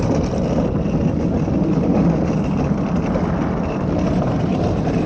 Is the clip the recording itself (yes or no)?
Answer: yes